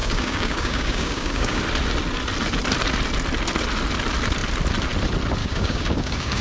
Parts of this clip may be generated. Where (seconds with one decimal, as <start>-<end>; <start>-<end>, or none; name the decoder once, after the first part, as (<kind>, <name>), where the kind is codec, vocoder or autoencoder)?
0.0-1.6 (codec, DAC); 5.4-6.4